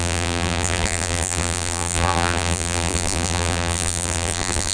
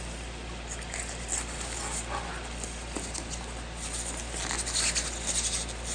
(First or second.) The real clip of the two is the second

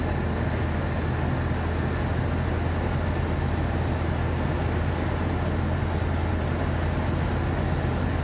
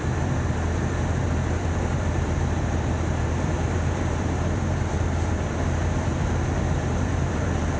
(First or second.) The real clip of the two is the first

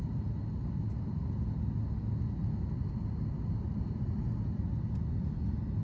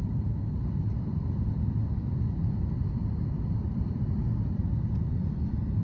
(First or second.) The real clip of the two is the first